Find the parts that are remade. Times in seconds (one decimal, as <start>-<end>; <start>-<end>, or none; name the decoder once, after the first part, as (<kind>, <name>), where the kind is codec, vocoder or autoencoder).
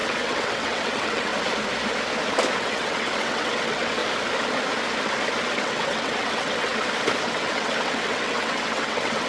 0.0-1.3 (vocoder, WaveNeXt); 2.6-4.0; 5.6-6.7; 7.3-9.3